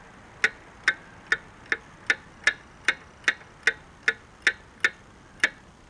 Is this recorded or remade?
recorded